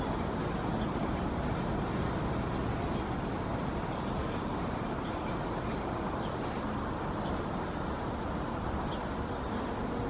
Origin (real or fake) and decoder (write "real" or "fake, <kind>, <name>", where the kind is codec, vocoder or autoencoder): real